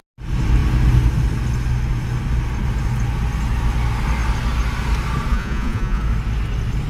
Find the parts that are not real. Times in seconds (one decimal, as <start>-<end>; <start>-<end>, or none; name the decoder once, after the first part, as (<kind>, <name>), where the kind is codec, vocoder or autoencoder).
5.3-6.0 (vocoder, Vocos)

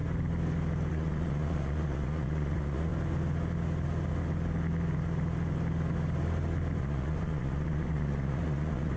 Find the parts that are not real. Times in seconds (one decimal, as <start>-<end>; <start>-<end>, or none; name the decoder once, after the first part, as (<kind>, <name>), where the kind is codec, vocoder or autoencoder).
0.9-2.9 (vocoder, Vocos); 6.8-9.0

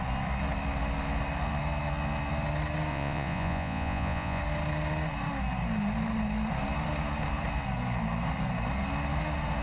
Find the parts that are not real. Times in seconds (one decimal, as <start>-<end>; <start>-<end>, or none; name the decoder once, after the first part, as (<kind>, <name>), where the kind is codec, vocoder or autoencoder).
2.9-4.4 (vocoder, Vocos)